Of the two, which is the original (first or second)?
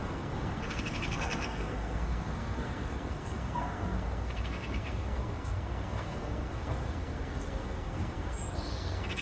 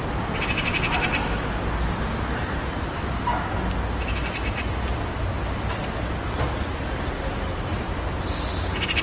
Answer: second